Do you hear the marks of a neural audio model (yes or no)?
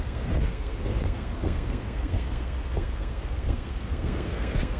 yes